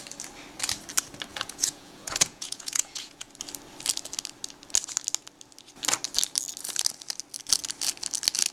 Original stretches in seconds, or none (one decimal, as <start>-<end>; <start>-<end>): 0.0-1.3; 3.3-8.5

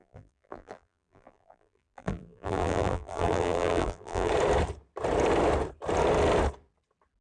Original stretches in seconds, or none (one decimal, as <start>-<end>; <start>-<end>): 4.3-7.2

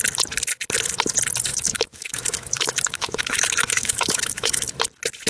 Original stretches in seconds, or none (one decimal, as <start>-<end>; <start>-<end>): 0.0-1.5; 4.7-5.3